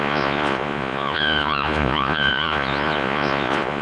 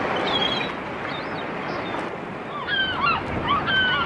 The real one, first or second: second